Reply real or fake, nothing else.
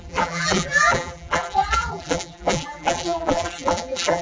fake